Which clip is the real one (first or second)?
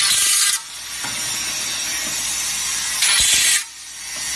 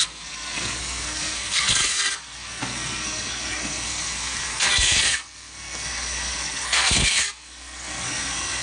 first